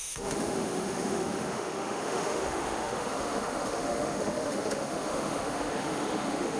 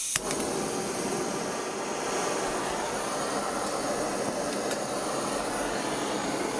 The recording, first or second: second